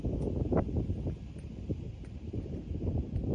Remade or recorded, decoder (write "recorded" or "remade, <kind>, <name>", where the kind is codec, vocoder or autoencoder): recorded